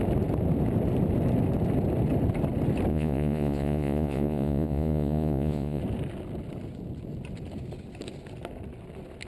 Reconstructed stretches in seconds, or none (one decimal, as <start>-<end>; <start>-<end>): 2.9-5.8